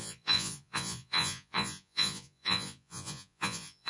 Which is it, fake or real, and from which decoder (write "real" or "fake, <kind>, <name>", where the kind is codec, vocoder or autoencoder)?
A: fake, vocoder, Vocos